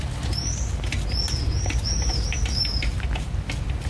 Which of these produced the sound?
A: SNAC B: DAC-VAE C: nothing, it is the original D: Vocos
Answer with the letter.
C